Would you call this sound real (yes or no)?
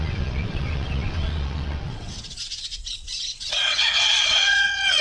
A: no